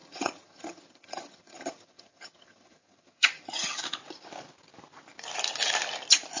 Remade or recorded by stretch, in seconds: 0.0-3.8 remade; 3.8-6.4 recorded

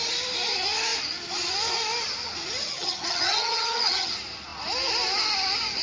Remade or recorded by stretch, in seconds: 0.0-2.7 recorded; 2.7-4.1 remade; 4.1-5.8 recorded

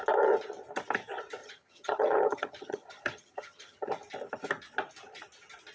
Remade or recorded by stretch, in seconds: 0.0-1.4 recorded; 1.4-3.9 remade; 3.9-5.7 recorded

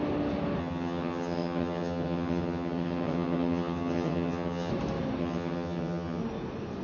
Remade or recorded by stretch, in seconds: 0.0-0.6 recorded; 0.6-4.7 remade; 4.7-5.2 recorded; 5.2-6.2 remade; 6.2-6.8 recorded

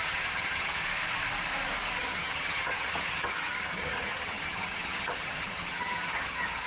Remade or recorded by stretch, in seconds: 0.0-0.8 remade; 0.8-2.0 recorded; 2.0-6.7 remade